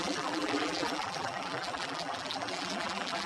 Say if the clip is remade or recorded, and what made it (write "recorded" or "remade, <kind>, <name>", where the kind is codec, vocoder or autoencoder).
remade, vocoder, BigVGAN v2